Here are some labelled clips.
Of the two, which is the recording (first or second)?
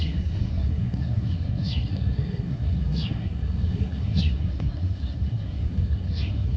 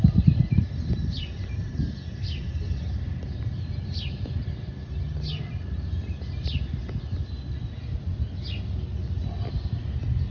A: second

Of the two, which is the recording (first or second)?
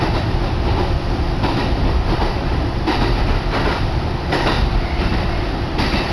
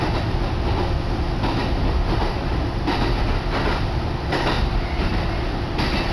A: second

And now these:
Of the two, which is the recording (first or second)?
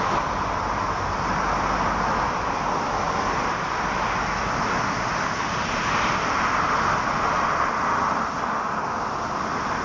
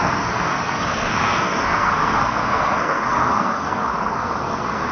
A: first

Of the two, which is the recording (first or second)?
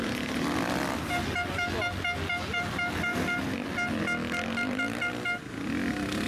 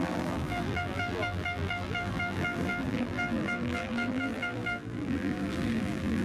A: first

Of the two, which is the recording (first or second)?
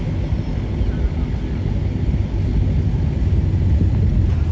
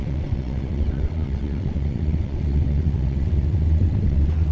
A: first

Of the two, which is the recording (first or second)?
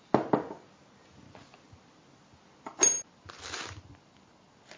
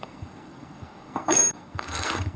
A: first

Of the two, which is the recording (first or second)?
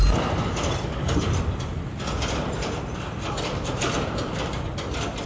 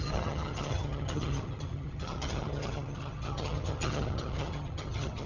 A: first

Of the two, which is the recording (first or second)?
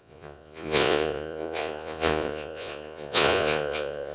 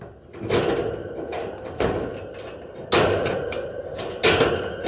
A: second